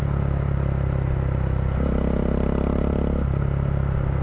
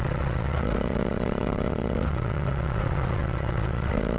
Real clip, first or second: first